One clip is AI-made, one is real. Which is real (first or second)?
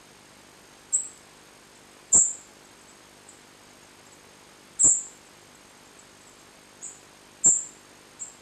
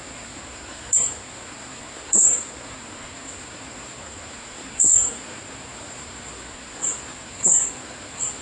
first